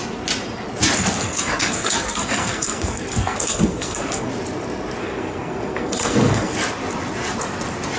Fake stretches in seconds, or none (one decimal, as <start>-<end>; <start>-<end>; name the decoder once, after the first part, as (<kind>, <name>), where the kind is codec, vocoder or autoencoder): 1.2-4.3 (codec, SNAC); 5.0-6.5